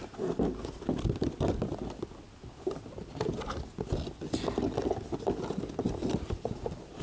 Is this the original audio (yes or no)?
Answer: yes